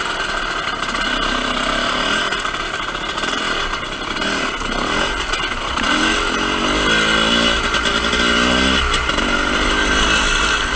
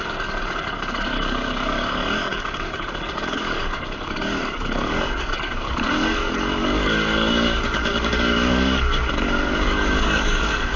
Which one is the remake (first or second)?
second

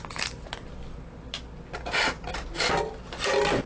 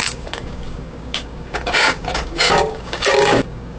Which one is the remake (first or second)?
second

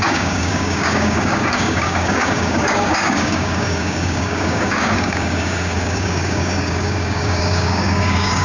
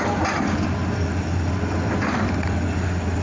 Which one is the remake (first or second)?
first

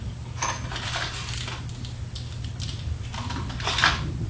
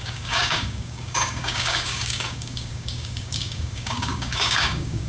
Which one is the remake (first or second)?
second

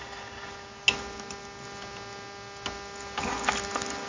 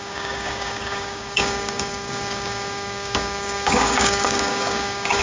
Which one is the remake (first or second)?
second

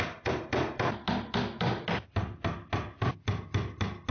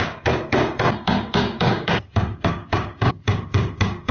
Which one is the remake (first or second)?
second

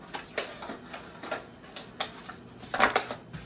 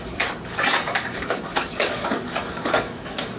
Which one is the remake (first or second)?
second